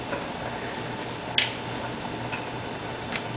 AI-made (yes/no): no